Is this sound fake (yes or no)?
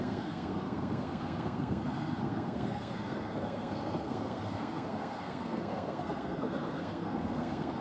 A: yes